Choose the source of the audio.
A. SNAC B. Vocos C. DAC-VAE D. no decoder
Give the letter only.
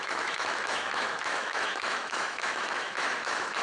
C